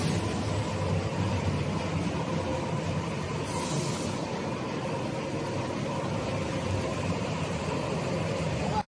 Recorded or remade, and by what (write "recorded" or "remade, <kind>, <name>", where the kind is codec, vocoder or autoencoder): recorded